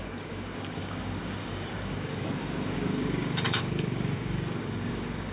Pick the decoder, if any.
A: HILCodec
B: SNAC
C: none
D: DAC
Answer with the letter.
D